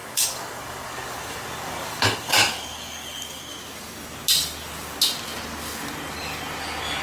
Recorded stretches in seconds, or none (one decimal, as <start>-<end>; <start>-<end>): 3.4-7.0